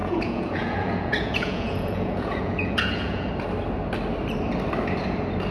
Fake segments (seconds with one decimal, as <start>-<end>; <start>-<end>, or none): 0.0-3.3

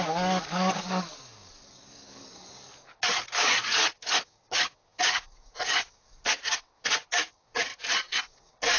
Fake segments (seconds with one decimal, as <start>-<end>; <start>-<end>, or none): 0.0-7.7; 8.2-8.8